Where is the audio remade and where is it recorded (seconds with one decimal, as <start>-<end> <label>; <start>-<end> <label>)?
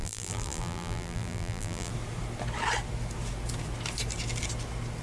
0.0-1.9 remade; 1.9-5.0 recorded